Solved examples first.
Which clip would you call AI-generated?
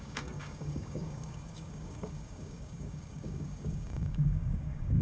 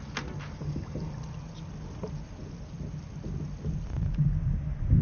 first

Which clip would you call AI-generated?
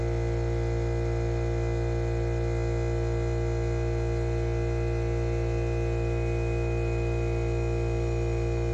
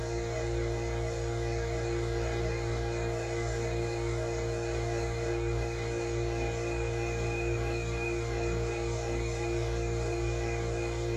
second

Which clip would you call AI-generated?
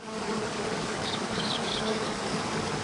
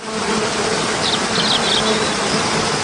first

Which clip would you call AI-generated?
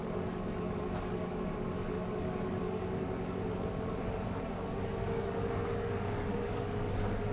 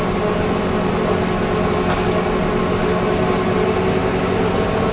first